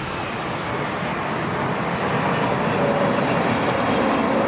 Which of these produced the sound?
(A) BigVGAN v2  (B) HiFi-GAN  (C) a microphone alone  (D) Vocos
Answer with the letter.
C